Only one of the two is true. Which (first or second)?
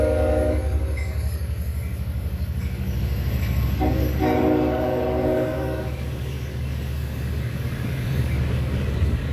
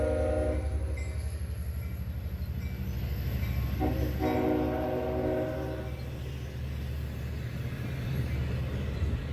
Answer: second